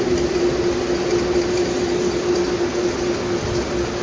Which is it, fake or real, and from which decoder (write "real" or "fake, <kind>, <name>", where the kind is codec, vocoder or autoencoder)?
real